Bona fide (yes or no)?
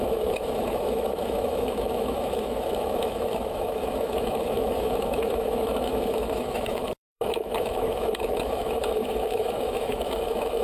no